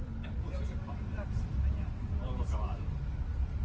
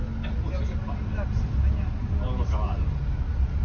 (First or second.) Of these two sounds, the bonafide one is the second